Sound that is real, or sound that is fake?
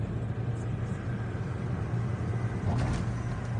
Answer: real